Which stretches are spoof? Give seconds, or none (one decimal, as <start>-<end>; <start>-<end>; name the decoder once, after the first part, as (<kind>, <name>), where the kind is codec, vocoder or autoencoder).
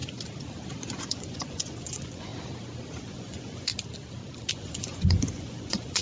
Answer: 1.0-2.3 (vocoder, Vocos); 3.0-3.7; 4.5-6.0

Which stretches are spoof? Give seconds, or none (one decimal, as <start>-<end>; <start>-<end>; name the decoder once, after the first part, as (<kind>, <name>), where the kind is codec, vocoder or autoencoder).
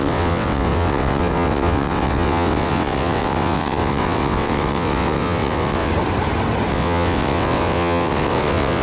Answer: 0.0-5.9 (vocoder, WaveNeXt); 6.7-8.8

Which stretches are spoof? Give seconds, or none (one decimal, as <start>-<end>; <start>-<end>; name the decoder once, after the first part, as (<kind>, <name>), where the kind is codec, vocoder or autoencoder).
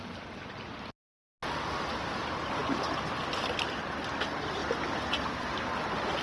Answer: none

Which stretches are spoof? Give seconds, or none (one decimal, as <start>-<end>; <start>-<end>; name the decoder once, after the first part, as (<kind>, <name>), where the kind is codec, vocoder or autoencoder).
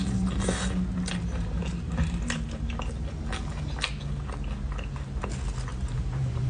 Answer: 1.6-2.7 (vocoder, BigVGAN v2); 5.7-6.5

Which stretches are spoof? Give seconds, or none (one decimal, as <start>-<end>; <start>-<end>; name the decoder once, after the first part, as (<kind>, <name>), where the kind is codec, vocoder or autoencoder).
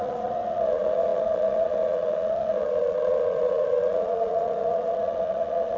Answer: 0.0-5.8 (vocoder, Vocos)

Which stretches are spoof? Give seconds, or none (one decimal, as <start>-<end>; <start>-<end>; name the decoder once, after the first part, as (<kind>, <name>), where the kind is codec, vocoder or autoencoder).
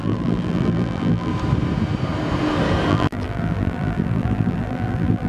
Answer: 0.0-1.3 (vocoder, BigVGAN v2); 2.9-5.3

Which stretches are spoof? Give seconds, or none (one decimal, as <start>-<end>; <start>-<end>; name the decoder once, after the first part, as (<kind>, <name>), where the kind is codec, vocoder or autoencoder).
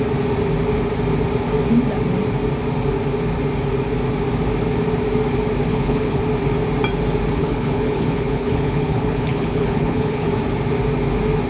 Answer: 5.7-6.2 (codec, HILCodec); 7.4-10.3